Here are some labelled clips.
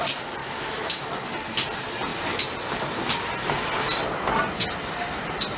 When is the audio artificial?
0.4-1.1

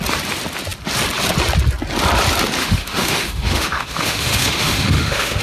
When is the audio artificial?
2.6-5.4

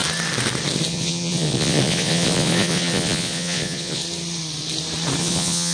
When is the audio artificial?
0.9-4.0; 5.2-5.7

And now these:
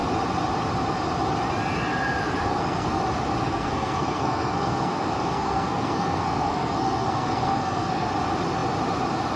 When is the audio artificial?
2.4-3.0; 3.4-8.1